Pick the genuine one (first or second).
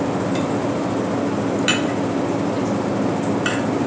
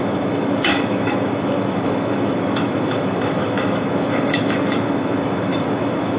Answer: first